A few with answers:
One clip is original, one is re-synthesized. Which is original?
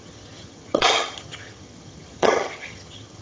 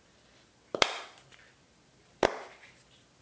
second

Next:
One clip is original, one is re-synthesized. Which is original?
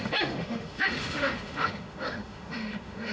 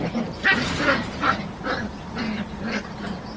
second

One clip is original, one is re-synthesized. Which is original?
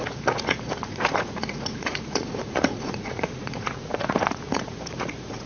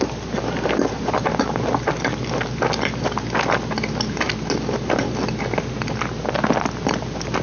second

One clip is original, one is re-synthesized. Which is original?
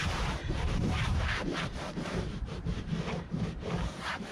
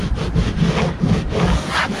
second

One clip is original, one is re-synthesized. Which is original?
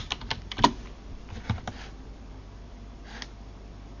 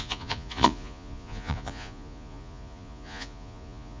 first